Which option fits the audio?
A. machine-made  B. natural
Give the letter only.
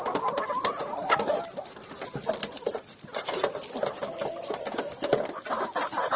B